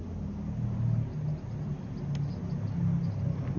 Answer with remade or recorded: recorded